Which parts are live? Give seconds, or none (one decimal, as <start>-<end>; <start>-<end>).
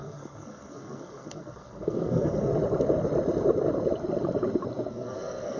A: 2.5-4.9